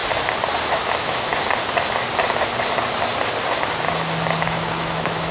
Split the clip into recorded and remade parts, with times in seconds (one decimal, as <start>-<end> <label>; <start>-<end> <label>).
0.0-0.6 recorded; 0.6-1.3 remade; 1.3-4.4 recorded; 4.4-5.3 remade